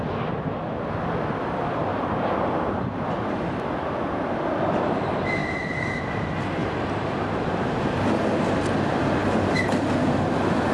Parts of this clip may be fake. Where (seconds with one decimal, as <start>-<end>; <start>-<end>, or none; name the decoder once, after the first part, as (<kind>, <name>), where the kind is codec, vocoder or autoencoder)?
1.9-3.6 (vocoder, BigVGAN v2); 5.4-6.0; 6.6-8.1